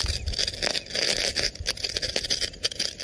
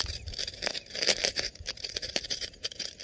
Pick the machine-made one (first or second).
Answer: second